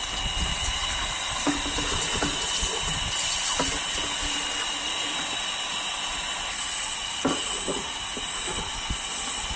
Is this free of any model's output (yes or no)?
yes